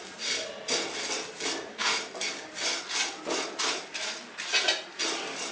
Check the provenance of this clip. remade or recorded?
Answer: recorded